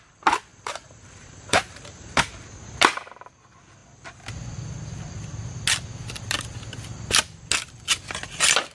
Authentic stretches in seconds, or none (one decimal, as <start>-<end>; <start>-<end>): 0.0-0.5; 2.3-8.7